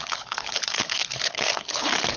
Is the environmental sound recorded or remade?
remade